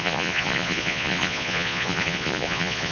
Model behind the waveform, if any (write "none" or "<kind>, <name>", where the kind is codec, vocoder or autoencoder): vocoder, Vocos